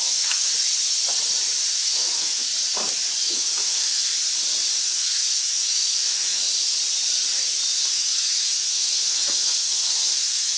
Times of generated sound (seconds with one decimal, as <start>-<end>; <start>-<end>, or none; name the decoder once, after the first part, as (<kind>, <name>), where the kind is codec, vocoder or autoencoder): 0.0-0.5 (autoencoder, DAC-VAE); 1.7-2.5; 3.2-4.1; 4.7-6.4; 7.9-10.6